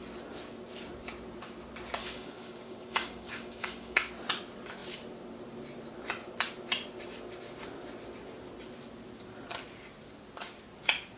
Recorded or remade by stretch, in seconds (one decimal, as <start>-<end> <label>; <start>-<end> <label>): 0.0-2.0 recorded; 2.0-4.1 remade; 4.1-11.2 recorded